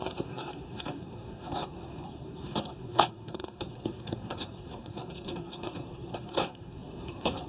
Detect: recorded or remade remade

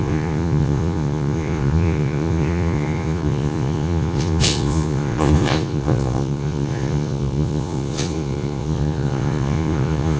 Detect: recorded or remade remade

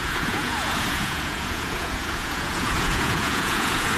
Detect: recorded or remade remade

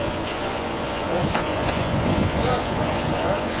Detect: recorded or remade remade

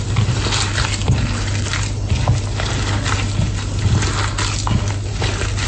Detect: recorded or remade recorded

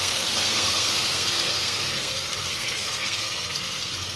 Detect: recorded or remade remade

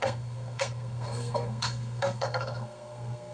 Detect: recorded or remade remade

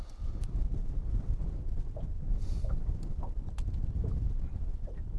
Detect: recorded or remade recorded